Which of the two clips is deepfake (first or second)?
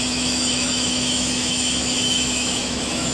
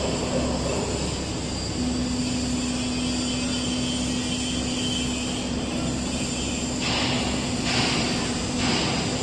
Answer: first